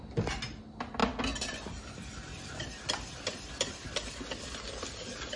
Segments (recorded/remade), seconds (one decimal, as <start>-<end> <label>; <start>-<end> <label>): 0.0-5.4 recorded